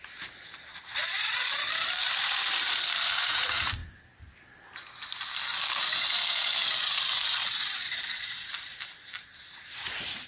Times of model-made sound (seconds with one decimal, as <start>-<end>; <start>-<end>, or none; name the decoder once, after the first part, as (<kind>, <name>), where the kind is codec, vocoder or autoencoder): 0.0-3.8 (vocoder, BigVGAN v2); 6.9-10.3